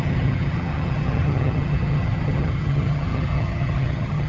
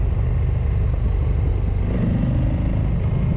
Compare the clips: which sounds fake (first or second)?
first